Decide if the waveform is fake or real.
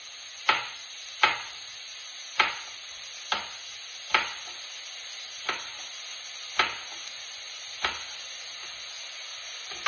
real